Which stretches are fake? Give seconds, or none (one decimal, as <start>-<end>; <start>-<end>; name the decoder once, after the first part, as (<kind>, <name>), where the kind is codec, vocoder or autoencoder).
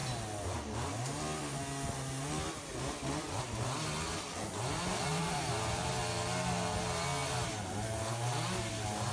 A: 5.1-5.9 (vocoder, BigVGAN v2)